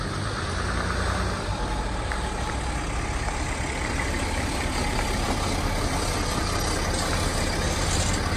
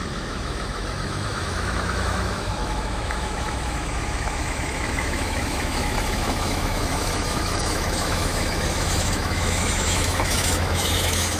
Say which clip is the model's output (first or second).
second